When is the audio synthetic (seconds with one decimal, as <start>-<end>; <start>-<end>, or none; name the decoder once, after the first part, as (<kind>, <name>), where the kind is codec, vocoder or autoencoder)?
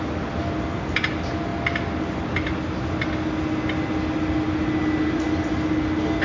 none